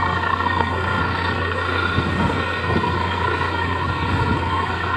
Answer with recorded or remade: remade